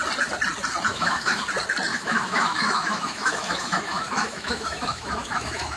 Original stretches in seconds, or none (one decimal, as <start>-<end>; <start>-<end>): 0.0-0.9; 1.4-1.9